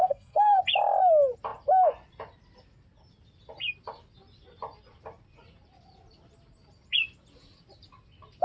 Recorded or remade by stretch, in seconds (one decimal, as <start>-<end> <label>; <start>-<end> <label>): 0.0-0.6 remade; 0.6-8.4 recorded